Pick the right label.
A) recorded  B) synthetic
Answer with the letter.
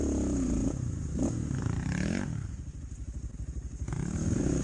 B